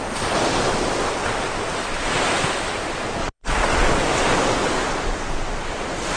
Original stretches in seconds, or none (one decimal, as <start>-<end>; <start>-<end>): 0.0-3.2; 3.9-6.2